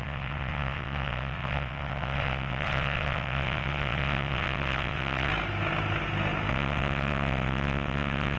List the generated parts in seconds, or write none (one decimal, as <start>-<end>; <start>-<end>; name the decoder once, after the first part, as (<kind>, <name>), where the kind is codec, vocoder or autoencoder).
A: 0.0-5.3 (vocoder, WaveNeXt); 6.5-8.4